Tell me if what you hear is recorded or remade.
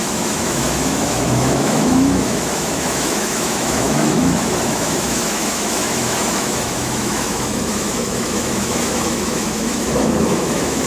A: remade